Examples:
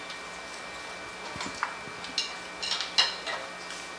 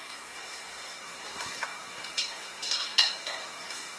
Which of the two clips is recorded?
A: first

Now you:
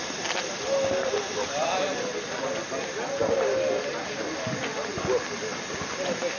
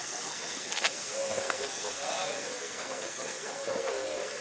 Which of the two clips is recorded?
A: first